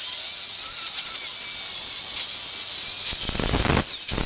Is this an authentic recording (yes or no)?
yes